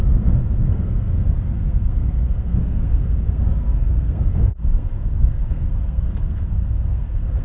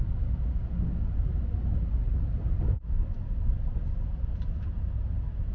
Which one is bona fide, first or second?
second